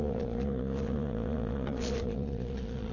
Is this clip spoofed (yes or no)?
yes